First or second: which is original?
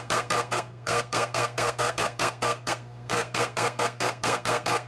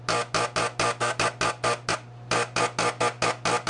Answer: second